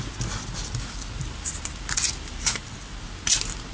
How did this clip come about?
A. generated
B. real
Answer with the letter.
B